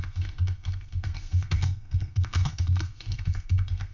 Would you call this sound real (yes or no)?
no